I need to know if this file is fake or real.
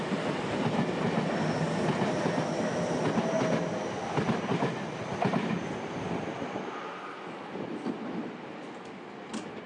real